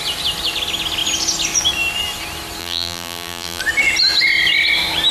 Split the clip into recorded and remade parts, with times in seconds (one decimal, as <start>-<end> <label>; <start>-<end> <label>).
0.0-2.6 recorded; 2.6-3.6 remade; 3.6-5.1 recorded